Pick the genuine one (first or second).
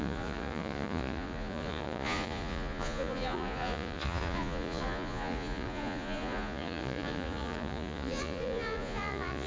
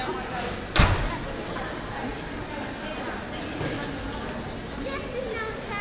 second